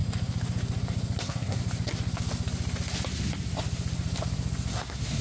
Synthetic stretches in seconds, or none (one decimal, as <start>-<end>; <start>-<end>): 1.2-1.6; 4.7-5.2